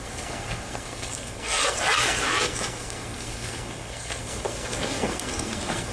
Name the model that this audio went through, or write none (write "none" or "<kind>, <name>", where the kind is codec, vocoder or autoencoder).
codec, SNAC